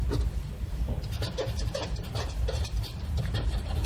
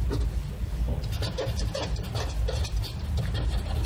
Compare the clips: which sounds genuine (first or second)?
second